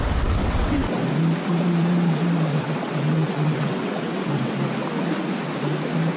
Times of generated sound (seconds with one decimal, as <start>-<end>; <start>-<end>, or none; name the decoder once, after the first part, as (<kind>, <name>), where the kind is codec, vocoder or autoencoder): 0.4-1.0 (vocoder, WaveNeXt); 2.5-4.5